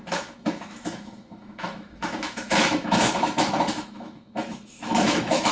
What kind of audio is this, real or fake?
fake